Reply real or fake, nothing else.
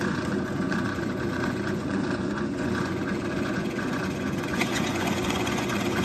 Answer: fake